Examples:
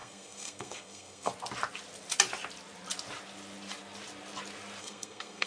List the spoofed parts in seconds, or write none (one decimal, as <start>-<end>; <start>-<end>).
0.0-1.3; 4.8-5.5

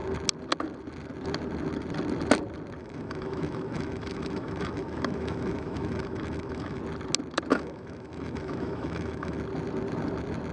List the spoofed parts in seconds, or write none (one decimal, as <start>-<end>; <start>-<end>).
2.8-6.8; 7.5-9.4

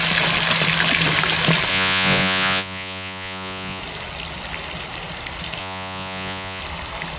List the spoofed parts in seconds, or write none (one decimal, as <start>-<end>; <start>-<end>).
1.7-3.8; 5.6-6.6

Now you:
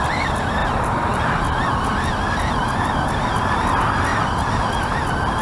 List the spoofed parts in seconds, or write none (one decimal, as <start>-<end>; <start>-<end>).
none

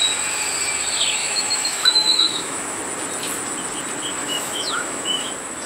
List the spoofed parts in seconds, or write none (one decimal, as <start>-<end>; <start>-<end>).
1.2-2.8; 4.2-5.3

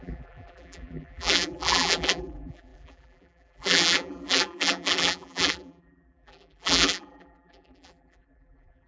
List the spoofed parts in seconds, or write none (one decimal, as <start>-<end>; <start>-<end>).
0.0-8.9

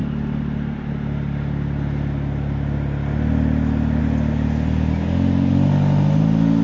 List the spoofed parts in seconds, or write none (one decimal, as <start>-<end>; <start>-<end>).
none

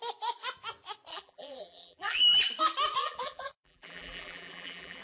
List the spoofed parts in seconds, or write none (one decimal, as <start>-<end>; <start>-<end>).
1.1-2.2; 3.0-5.0